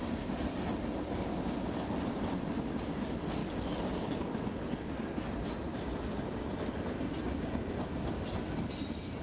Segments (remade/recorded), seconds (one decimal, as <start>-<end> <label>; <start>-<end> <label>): 0.0-9.2 recorded